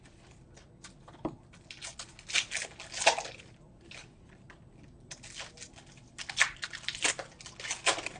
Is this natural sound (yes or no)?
yes